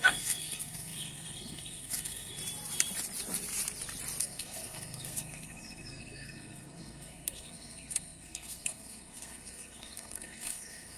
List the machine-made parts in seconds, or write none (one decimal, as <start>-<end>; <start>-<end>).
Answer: 0.0-2.4; 4.2-11.0